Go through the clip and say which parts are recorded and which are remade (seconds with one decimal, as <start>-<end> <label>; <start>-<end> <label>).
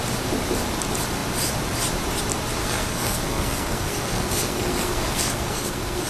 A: 0.0-2.6 recorded; 2.6-6.1 remade